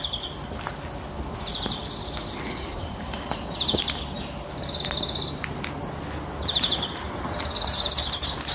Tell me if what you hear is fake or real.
real